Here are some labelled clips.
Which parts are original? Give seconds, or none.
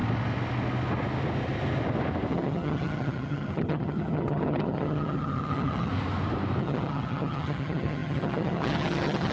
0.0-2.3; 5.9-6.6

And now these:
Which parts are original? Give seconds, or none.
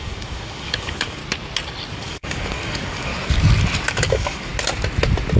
1.2-1.9; 3.1-3.9; 4.5-5.4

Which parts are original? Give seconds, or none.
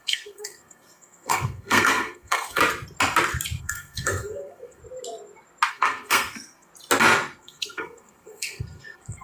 2.6-3.6; 4.8-5.7; 6.7-7.4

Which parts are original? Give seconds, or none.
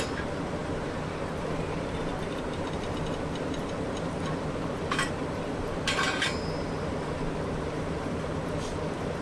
none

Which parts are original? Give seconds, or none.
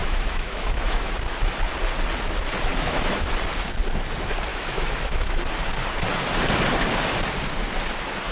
1.1-2.7; 3.3-4.5; 5.4-8.3